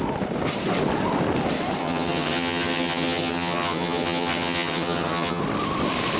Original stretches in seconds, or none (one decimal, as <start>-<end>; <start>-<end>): 0.0-1.8; 5.4-6.2